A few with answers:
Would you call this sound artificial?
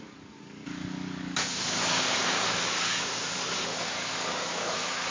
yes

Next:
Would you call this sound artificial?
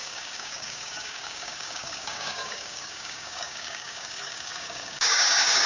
yes